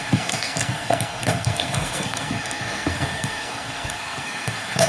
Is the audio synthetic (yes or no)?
yes